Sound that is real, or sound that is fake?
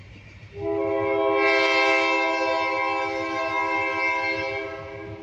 real